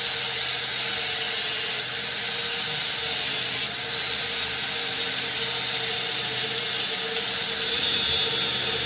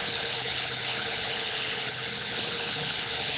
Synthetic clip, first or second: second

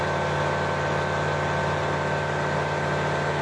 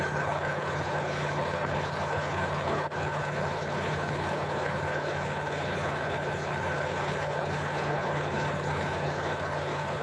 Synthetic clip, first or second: second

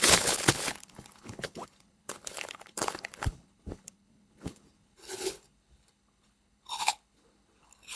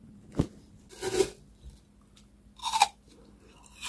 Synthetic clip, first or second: first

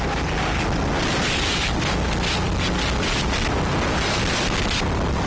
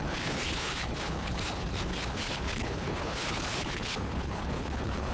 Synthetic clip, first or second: second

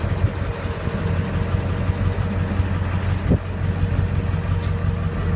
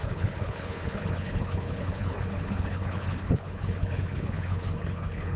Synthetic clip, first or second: second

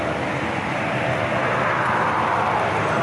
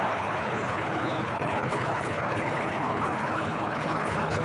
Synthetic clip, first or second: second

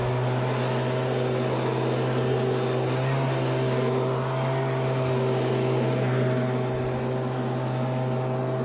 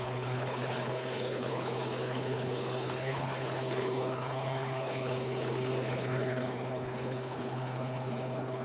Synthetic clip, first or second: second